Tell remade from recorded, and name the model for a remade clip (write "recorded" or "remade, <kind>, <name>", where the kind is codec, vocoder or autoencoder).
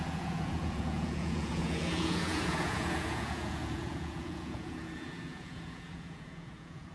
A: remade, vocoder, Vocos